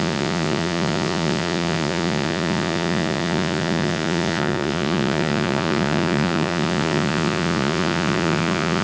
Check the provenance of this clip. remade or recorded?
remade